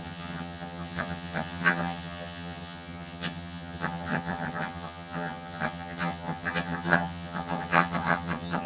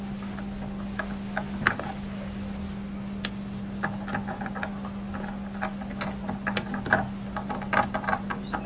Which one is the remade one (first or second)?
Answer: first